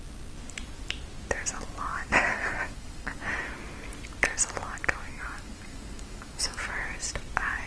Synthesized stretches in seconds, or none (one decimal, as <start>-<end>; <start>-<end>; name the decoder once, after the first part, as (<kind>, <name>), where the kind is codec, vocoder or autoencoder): 1.9-3.2 (codec, DAC); 5.1-6.6